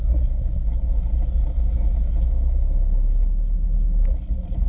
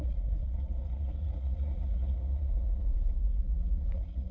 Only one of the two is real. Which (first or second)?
first